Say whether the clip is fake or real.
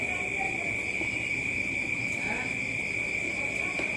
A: fake